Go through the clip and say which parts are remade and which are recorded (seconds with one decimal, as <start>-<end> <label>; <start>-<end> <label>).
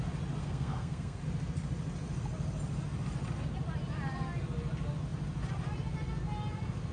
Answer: 0.0-0.4 recorded; 0.4-1.2 remade; 1.2-6.9 recorded